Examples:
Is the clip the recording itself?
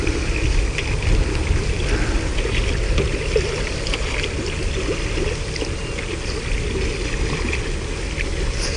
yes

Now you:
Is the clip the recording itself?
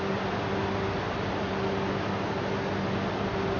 yes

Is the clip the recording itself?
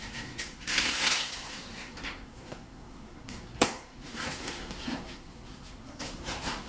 no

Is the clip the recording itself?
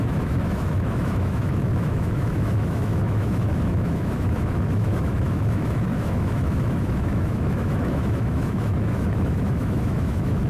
no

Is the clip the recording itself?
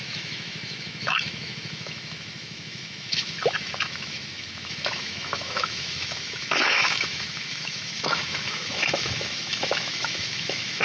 no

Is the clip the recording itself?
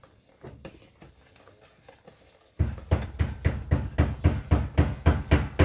yes